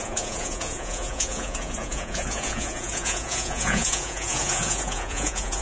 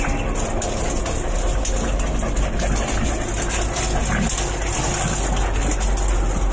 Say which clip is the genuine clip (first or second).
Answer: second